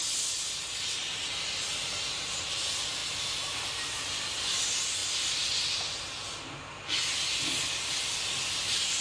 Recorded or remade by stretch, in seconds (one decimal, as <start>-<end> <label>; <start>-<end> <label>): 0.0-9.0 recorded